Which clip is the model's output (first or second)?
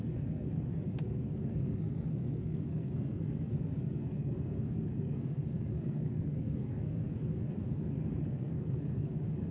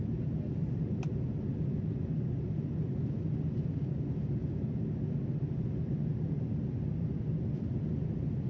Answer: first